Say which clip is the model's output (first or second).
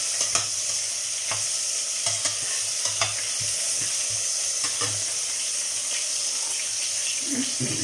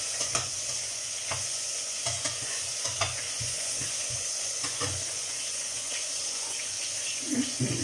second